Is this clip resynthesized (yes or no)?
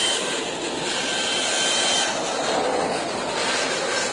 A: no